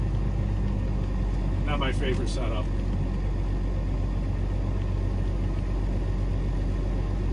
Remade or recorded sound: recorded